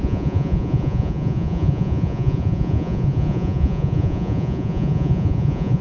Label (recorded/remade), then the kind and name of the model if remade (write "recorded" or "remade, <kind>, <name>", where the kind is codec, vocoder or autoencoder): remade, vocoder, Vocos